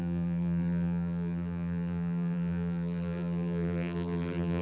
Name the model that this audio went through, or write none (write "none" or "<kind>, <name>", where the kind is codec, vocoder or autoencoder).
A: vocoder, BigVGAN v2